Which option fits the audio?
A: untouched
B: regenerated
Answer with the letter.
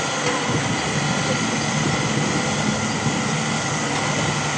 A